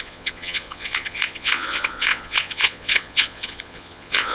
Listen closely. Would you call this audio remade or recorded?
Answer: remade